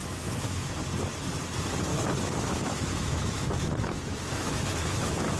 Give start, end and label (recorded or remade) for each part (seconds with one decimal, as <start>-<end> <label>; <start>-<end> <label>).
0.0-0.7 remade; 0.7-1.9 recorded; 1.9-5.4 remade

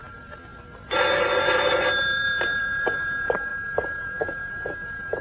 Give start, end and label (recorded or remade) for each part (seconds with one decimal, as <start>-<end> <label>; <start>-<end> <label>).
0.0-5.2 recorded

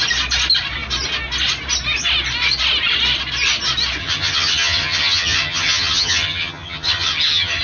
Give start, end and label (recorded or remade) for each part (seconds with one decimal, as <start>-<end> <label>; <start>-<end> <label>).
0.0-4.0 recorded; 4.0-7.6 remade

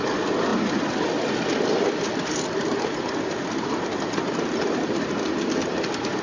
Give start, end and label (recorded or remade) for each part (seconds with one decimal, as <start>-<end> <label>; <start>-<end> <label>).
0.0-6.2 recorded